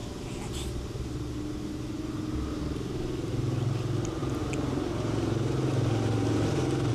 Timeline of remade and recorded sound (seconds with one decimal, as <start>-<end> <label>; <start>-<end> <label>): 0.0-6.9 recorded